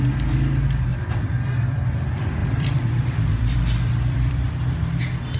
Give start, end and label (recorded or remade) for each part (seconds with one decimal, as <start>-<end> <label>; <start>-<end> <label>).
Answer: 0.0-0.9 recorded; 0.9-2.0 remade; 2.0-2.4 recorded; 2.4-4.5 remade; 4.5-5.4 recorded